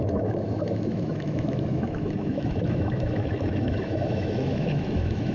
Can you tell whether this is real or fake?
fake